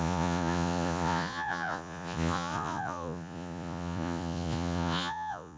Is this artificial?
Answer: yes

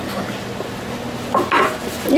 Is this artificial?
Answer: no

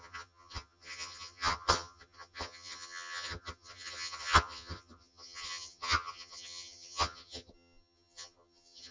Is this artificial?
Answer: yes